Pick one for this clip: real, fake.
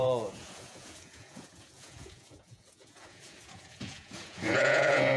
fake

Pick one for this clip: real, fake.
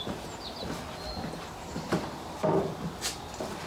real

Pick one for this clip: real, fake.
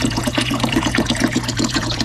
fake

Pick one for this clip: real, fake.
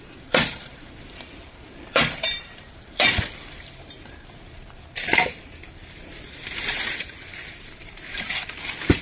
fake